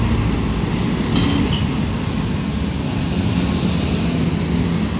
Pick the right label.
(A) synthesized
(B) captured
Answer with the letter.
B